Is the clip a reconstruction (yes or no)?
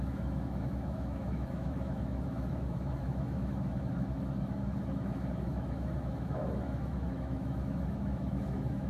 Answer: yes